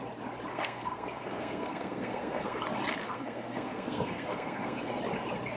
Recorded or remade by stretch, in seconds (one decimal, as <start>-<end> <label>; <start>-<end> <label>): 0.0-0.5 recorded; 0.5-2.6 remade; 2.6-3.0 recorded; 3.0-5.0 remade; 5.0-5.6 recorded